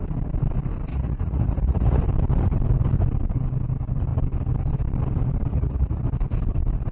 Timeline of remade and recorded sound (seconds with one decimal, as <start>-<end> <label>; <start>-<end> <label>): 0.0-0.9 recorded; 0.9-2.0 remade; 2.0-5.5 recorded; 5.5-6.0 remade; 6.0-6.9 recorded